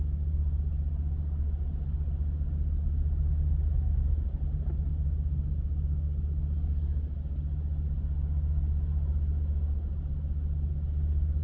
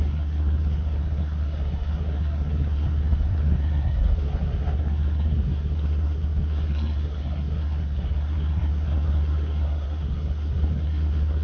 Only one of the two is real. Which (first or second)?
first